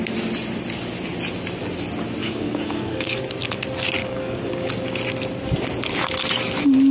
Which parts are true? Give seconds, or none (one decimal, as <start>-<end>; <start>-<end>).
0.0-2.2; 3.2-4.0; 4.7-6.9